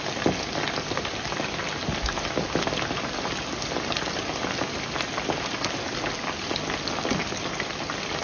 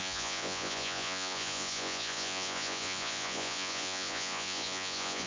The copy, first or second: second